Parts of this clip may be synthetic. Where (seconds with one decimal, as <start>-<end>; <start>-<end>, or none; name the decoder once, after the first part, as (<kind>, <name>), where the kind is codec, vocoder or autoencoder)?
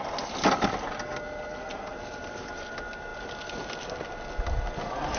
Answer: none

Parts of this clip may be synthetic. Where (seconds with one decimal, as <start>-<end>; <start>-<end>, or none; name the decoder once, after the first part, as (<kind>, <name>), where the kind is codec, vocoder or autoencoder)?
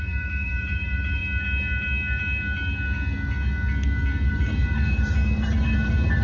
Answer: 0.0-1.2 (vocoder, BigVGAN v2); 4.3-6.2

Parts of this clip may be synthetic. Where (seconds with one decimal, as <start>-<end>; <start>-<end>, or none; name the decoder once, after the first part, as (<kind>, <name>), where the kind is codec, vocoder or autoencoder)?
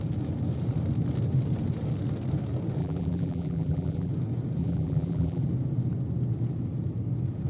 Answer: 2.8-4.1 (vocoder, BigVGAN v2); 4.6-5.4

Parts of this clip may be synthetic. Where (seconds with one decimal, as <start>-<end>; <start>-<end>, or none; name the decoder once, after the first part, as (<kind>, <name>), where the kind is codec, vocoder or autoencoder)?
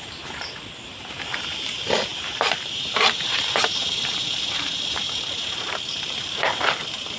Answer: 0.0-7.2 (vocoder, BigVGAN v2)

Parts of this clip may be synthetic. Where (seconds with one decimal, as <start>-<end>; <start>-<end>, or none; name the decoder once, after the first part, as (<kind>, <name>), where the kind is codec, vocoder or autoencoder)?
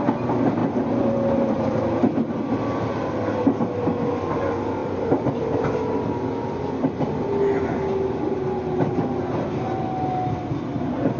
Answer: 0.6-2.4 (vocoder, BigVGAN v2); 4.8-5.4